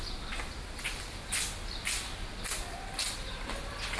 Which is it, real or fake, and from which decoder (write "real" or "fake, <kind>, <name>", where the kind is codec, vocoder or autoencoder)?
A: real